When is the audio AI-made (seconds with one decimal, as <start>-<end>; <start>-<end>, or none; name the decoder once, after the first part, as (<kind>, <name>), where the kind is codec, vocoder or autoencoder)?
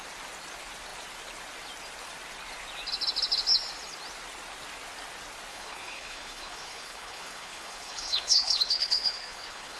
5.5-9.8 (codec, HILCodec)